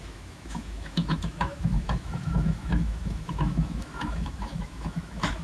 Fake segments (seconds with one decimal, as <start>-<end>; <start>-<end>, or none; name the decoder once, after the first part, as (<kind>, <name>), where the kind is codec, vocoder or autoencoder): 0.0-5.4 (autoencoder, DAC-VAE)

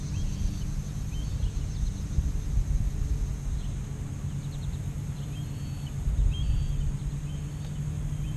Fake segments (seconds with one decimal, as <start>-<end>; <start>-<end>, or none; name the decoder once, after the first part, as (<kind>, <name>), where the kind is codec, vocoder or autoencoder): none

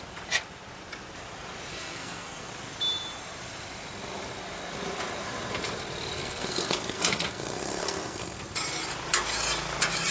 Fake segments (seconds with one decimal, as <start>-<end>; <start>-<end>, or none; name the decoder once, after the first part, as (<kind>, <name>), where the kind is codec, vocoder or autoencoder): 1.7-2.5 (codec, SNAC); 6.2-8.4

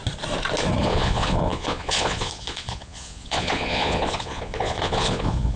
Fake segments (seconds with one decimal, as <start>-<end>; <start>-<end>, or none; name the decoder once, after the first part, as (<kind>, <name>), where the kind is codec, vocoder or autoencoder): 0.8-5.6 (vocoder, Vocos)

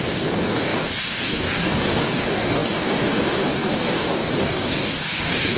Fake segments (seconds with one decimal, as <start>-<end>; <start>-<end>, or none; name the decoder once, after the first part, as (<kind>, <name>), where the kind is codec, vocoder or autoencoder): 0.0-5.6 (codec, DAC)

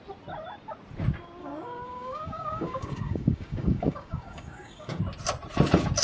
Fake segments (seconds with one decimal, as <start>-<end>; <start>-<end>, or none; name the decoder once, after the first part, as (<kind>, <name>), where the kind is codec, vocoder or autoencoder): 1.4-5.0 (codec, DAC)

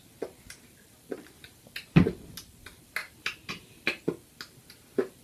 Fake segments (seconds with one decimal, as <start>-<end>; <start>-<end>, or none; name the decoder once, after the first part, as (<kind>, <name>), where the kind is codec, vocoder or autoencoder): none